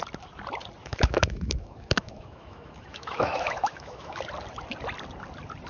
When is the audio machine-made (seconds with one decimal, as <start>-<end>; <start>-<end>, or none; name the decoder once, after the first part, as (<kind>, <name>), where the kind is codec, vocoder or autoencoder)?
0.8-4.2 (autoencoder, DAC-VAE)

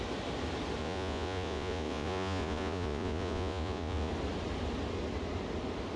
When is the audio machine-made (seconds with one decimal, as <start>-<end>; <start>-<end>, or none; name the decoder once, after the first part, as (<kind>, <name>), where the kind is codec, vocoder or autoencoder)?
0.8-4.1 (vocoder, Vocos)

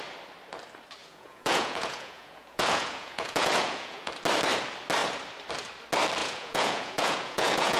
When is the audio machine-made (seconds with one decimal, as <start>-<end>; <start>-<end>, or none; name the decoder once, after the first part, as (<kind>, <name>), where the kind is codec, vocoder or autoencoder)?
1.0-4.1 (vocoder, Vocos); 6.2-7.8

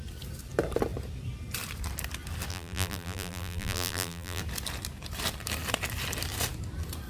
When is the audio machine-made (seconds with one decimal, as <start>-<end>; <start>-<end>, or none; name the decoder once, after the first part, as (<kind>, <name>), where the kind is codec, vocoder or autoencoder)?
2.5-4.4 (vocoder, BigVGAN v2)

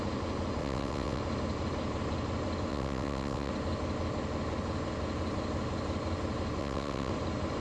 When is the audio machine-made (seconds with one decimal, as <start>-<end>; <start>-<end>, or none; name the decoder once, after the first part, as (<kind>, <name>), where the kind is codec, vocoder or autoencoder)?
0.6-1.2 (vocoder, WaveNeXt); 2.7-3.5; 6.6-7.1

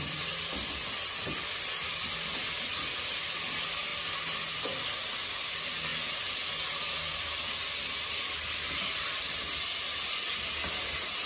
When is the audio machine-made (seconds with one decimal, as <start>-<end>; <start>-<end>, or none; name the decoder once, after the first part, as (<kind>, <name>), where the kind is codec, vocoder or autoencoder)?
none

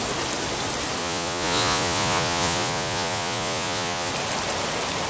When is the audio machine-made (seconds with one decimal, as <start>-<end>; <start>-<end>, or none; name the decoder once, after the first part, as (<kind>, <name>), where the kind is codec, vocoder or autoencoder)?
1.0-4.1 (vocoder, Vocos)